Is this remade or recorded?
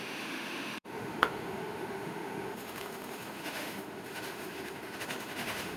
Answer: remade